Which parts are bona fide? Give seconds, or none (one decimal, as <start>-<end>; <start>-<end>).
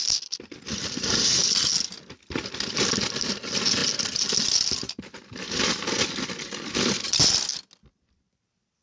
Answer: 0.0-8.8